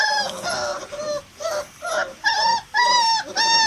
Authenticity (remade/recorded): recorded